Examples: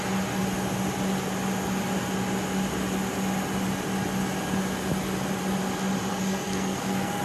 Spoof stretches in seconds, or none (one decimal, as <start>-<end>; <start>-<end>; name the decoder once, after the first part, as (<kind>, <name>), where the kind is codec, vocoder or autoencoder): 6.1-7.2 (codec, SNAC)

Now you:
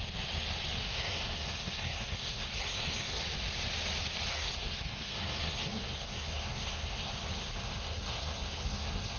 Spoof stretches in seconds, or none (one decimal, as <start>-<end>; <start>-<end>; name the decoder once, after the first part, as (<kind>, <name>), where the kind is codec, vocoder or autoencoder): 0.8-3.2 (codec, SNAC); 4.3-9.2

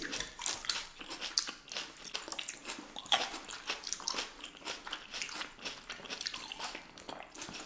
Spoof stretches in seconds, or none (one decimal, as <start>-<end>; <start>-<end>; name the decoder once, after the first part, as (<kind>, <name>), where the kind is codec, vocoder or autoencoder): none

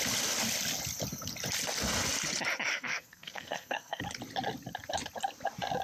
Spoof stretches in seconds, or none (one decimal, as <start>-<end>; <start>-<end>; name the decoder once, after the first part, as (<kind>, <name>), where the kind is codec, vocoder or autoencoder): 2.7-4.0 (codec, SNAC)